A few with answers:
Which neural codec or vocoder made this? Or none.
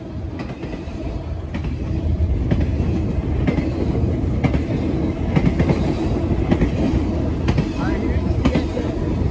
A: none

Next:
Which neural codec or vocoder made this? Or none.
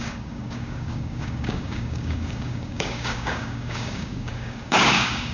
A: codec, DAC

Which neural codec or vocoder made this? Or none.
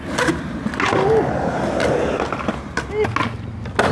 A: none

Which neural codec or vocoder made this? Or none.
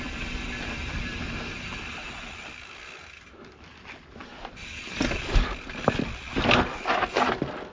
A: none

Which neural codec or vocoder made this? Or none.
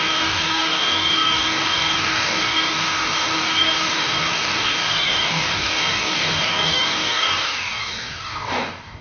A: codec, DAC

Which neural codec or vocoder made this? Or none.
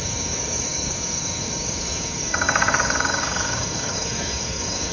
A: codec, DAC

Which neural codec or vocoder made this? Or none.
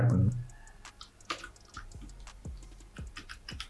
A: none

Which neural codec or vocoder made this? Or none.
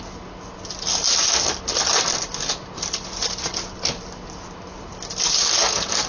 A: none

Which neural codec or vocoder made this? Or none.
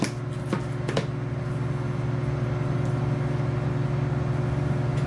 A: none